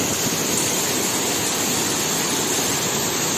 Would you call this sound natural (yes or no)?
yes